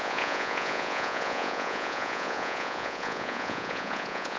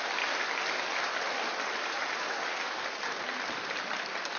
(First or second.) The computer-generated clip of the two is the first